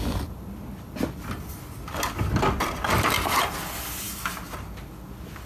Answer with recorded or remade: recorded